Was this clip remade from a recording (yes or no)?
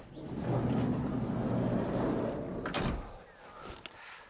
no